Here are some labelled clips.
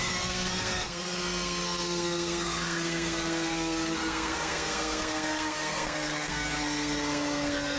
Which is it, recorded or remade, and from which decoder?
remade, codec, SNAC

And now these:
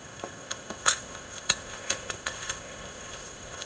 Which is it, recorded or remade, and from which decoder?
remade, codec, ZipCodec